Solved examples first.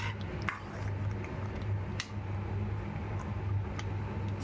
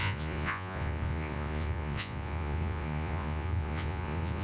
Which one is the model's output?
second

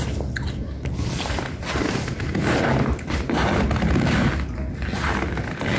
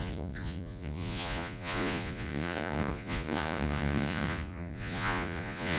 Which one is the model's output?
second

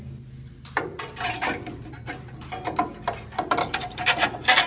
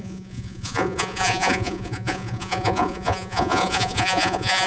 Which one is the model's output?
second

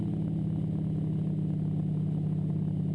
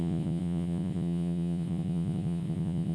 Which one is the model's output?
second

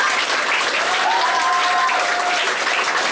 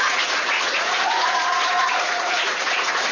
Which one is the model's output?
second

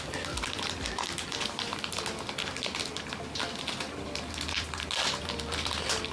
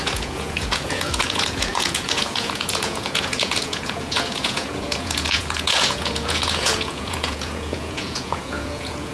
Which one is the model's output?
second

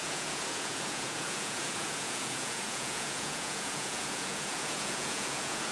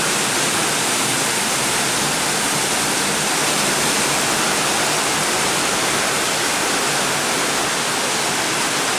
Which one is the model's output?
first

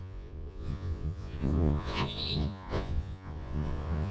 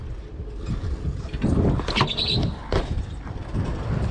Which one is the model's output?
first